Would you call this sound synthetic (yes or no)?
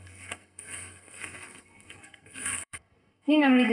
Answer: yes